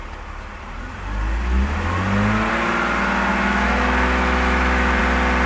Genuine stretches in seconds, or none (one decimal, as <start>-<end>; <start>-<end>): 0.0-3.3; 5.0-5.5